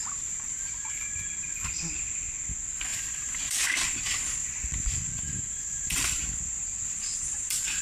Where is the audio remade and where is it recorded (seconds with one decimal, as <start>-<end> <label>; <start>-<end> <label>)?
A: 0.0-2.9 recorded; 2.9-7.8 remade